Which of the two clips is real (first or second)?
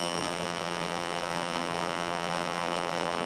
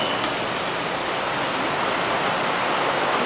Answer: second